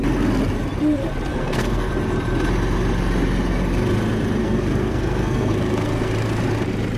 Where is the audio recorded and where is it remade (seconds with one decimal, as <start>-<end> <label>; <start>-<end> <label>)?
0.0-1.3 recorded; 1.3-1.9 remade; 1.9-4.4 recorded; 4.4-6.1 remade; 6.1-7.0 recorded